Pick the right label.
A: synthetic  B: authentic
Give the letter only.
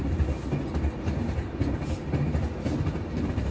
B